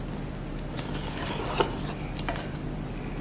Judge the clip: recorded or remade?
recorded